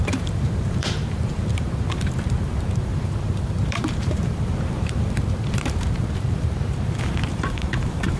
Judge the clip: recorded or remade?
remade